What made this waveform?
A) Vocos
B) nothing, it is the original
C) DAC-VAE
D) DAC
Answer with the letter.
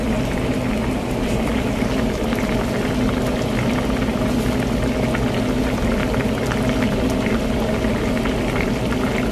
B